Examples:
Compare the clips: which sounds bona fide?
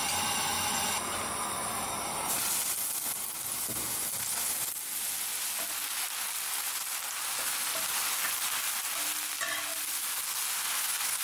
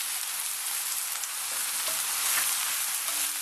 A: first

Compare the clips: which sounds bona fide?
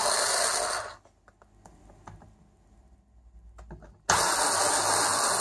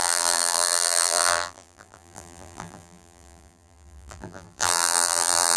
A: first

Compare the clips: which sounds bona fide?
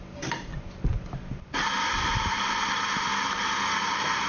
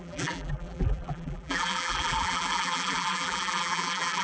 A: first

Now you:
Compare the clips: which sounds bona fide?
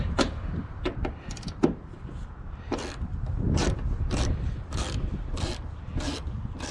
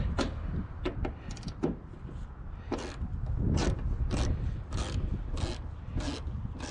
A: second